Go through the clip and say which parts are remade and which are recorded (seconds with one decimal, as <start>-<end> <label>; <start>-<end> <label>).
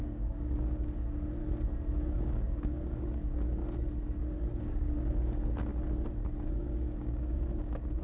0.0-1.4 remade; 1.4-2.1 recorded; 2.1-3.6 remade; 3.6-4.6 recorded; 4.6-5.7 remade; 5.7-6.5 recorded; 6.5-8.0 remade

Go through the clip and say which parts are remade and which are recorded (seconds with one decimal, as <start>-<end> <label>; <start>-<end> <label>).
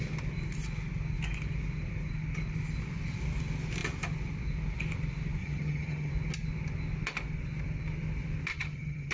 0.0-5.4 recorded; 5.4-6.1 remade; 6.1-8.5 recorded; 8.5-9.1 remade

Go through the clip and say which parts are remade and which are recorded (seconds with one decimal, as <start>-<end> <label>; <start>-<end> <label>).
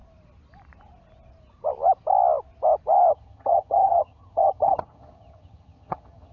0.0-3.1 recorded; 3.1-6.3 remade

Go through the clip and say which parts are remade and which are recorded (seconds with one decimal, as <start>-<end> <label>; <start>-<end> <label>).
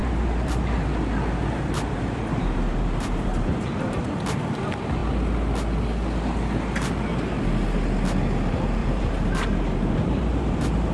0.0-0.9 remade; 0.9-1.4 recorded; 1.4-4.0 remade; 4.0-8.8 recorded; 8.8-10.9 remade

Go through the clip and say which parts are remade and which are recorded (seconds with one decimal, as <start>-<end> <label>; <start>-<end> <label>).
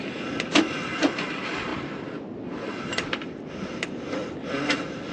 0.0-5.1 recorded